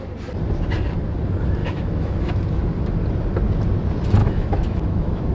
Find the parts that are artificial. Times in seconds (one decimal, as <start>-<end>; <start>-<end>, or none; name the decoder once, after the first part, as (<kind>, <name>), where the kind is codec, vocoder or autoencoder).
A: 1.6-2.4 (autoencoder, DAC-VAE); 4.2-5.3